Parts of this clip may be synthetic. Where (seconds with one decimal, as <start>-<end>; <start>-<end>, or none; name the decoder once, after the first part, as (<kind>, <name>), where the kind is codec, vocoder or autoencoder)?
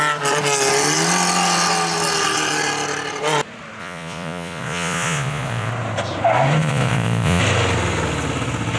3.8-5.7 (vocoder, Vocos); 6.6-7.4